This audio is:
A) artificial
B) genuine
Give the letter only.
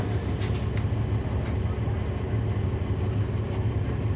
B